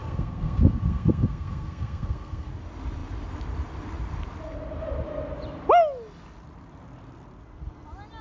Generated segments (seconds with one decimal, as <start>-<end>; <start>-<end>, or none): 0.0-2.5